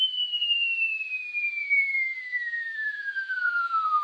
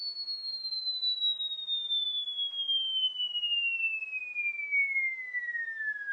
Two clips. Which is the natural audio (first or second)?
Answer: second